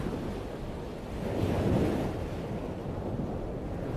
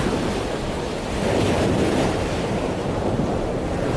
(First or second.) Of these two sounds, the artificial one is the second